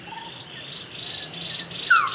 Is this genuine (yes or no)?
yes